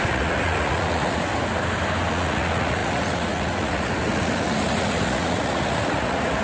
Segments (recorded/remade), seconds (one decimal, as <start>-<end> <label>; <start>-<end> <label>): 0.0-1.3 remade; 1.3-2.1 recorded; 2.1-6.4 remade